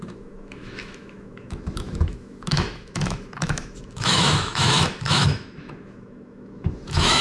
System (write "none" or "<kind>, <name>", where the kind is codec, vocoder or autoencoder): autoencoder, DAC-VAE